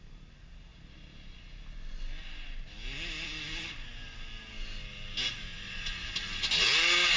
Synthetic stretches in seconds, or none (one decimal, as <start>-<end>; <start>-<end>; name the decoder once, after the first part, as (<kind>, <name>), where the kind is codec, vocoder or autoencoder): 5.5-6.1 (vocoder, Vocos)